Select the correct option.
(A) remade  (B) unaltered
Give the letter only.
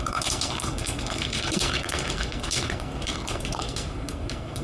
A